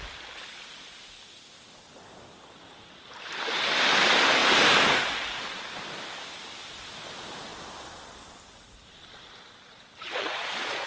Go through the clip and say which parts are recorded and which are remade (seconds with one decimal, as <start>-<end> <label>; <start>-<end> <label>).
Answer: 0.0-10.0 recorded; 10.0-10.9 remade